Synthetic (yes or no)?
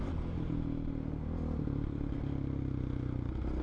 no